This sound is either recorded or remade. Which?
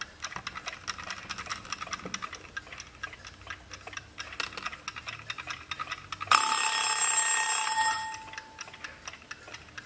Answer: recorded